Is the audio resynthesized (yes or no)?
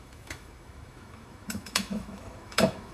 yes